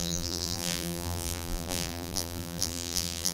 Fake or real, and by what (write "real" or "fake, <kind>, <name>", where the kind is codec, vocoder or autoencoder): fake, vocoder, BigVGAN v2